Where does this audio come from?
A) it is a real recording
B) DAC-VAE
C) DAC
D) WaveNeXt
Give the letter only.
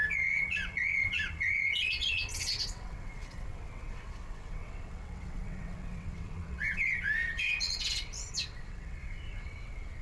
D